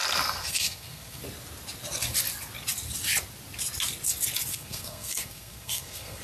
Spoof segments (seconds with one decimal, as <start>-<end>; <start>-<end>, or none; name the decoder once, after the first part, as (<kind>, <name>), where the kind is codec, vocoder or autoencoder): 0.4-1.2 (codec, SNAC); 4.5-6.2